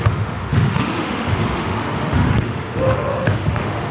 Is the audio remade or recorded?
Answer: remade